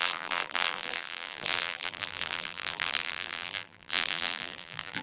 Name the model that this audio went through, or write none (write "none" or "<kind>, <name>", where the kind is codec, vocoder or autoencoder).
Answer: vocoder, BigVGAN v2